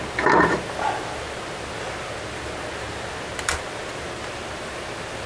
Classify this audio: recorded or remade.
recorded